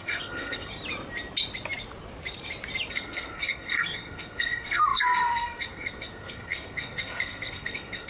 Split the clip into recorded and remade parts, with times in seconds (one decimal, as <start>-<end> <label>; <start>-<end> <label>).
0.0-0.7 remade; 0.7-2.9 recorded; 2.9-8.1 remade